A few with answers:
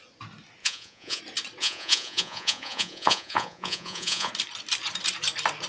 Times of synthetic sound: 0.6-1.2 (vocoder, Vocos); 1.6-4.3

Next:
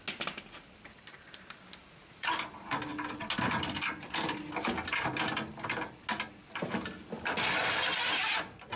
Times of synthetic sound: 1.8-2.3 (vocoder, Vocos)